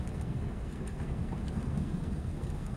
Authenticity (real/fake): fake